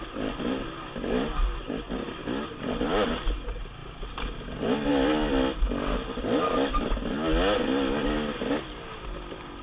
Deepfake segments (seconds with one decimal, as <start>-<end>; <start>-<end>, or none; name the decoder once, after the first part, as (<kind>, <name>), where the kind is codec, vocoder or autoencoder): none